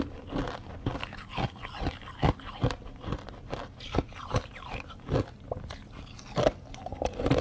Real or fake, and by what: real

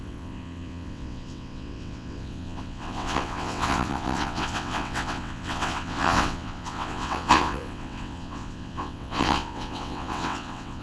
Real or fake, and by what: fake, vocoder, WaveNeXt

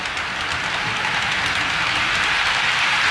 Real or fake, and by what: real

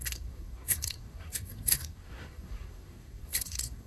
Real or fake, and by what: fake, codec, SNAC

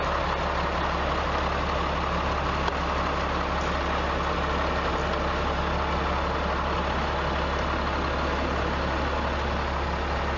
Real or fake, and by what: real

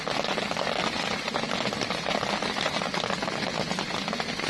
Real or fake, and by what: real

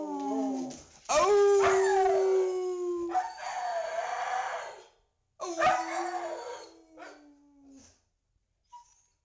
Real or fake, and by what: real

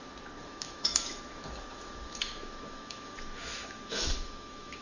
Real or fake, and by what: fake, autoencoder, DAC-VAE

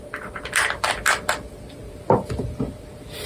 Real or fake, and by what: fake, vocoder, BigVGAN v2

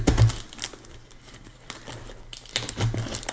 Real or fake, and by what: real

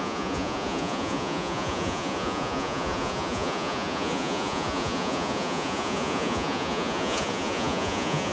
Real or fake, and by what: fake, vocoder, Vocos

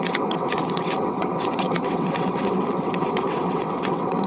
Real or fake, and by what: fake, vocoder, WaveNeXt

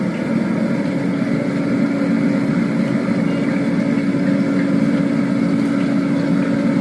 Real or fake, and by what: real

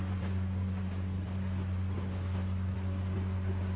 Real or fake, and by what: real